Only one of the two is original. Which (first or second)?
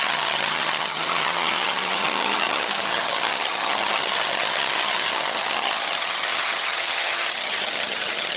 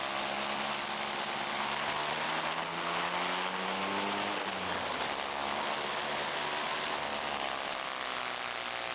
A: second